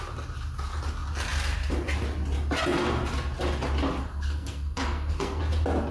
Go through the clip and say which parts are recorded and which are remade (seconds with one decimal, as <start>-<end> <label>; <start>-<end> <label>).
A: 0.0-4.0 recorded; 4.0-5.4 remade; 5.4-5.9 recorded